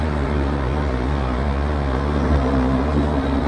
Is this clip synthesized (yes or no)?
yes